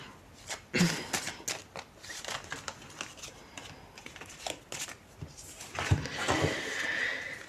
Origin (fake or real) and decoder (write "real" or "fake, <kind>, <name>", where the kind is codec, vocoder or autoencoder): real